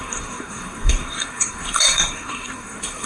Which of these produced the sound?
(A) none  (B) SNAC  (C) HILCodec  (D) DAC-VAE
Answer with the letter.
B